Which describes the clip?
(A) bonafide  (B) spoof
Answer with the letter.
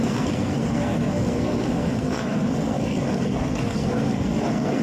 B